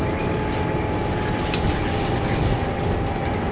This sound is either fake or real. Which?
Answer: real